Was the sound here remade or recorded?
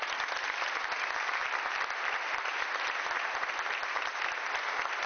recorded